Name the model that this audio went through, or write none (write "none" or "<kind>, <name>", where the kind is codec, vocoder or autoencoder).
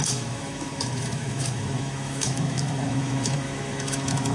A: autoencoder, DAC-VAE